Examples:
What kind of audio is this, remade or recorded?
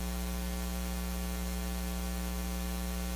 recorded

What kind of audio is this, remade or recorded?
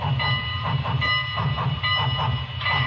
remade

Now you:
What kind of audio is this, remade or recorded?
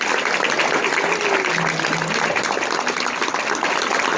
recorded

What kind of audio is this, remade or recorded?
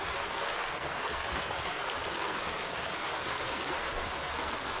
remade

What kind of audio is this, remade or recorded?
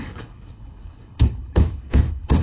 remade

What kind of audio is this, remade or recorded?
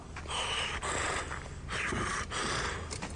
recorded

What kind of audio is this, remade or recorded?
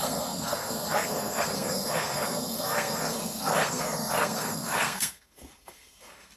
remade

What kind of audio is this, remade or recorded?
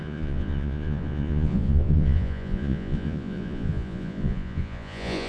remade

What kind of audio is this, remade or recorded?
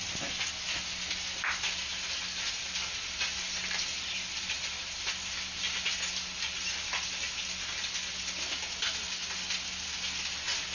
recorded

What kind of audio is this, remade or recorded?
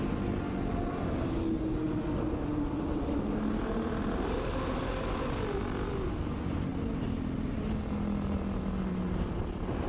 recorded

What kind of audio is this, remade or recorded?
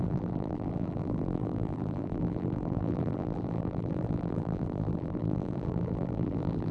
remade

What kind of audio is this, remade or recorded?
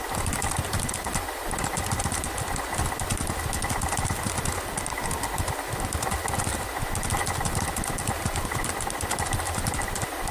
recorded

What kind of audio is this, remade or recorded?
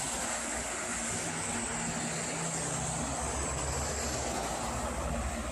recorded